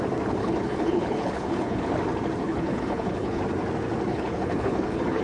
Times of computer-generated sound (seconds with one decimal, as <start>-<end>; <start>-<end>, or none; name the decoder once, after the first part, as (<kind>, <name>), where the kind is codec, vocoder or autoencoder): 0.4-1.8 (codec, HILCodec); 2.4-3.4; 4.1-5.2